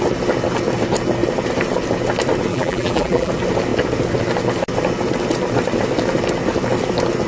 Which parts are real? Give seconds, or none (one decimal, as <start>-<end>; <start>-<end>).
0.0-2.5; 3.3-7.3